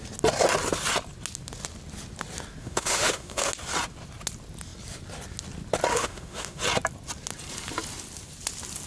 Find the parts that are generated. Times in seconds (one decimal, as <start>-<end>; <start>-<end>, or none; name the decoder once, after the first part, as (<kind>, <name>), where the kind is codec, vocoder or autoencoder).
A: 2.6-3.5 (autoencoder, DAC-VAE); 5.9-6.6

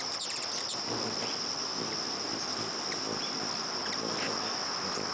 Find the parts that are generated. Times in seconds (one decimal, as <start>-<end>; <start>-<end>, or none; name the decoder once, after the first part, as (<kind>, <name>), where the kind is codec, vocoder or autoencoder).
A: none

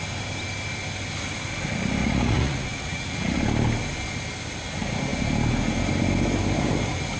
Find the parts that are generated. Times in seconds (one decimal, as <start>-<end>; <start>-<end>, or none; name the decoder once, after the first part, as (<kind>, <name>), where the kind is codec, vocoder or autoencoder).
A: 2.0-3.4 (vocoder, Vocos)

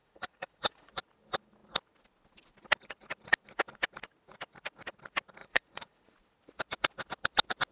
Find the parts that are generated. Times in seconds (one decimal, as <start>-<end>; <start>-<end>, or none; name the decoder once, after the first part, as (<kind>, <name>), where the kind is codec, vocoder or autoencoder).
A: 0.0-0.9 (vocoder, Vocos); 5.4-6.1

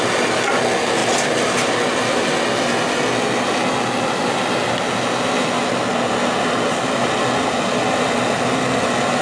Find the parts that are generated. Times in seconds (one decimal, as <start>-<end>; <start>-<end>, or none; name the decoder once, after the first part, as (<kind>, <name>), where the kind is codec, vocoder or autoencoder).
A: none

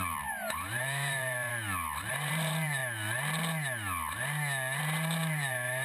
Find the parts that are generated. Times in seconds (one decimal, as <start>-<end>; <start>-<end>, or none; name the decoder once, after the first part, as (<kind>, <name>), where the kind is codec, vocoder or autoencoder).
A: 0.0-1.5 (vocoder, BigVGAN v2); 2.1-2.8; 4.8-5.8

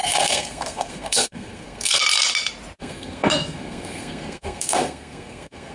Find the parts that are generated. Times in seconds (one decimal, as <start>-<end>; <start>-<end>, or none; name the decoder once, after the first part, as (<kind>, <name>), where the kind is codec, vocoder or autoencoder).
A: 0.0-2.0 (codec, SNAC); 2.8-5.7